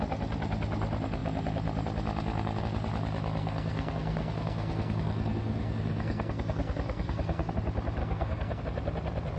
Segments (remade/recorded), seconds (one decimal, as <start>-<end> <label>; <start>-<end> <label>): 0.0-3.4 recorded; 3.4-7.5 remade; 7.5-8.0 recorded; 8.0-8.6 remade; 8.6-9.4 recorded